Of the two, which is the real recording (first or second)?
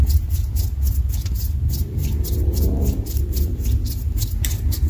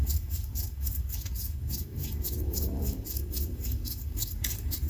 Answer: first